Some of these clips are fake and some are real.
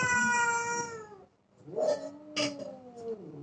real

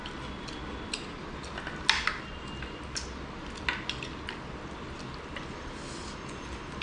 real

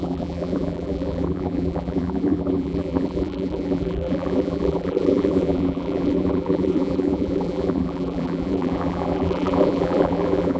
fake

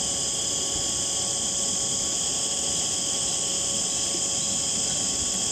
real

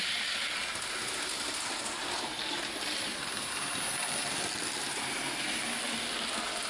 real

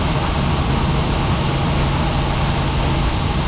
real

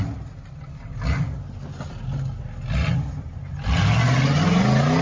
real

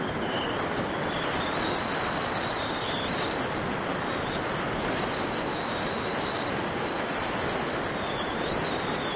real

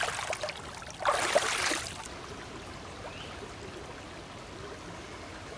real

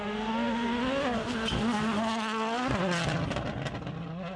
real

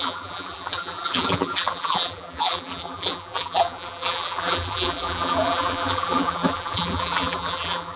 fake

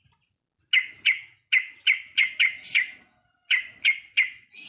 real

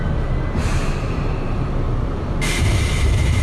fake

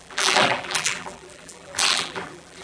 fake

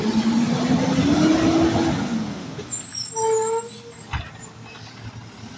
real